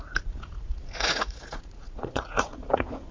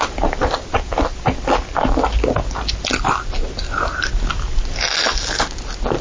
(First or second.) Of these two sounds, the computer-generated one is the first